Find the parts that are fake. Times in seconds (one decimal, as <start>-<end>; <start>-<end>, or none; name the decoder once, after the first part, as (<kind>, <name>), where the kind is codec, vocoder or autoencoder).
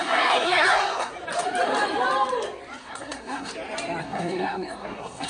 0.0-1.1 (codec, SNAC); 2.8-3.5; 4.0-5.3